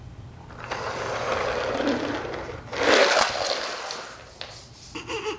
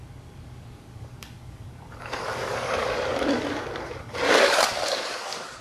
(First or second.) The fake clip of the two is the second